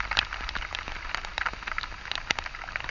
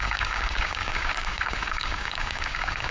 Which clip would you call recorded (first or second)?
first